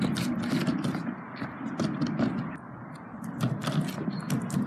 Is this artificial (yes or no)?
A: no